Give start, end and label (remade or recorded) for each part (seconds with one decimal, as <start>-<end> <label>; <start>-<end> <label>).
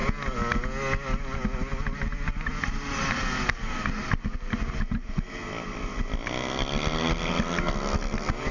0.0-8.5 recorded